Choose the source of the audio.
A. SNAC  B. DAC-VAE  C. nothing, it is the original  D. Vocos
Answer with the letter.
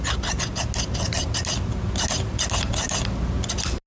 C